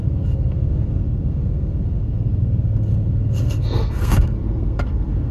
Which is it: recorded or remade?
remade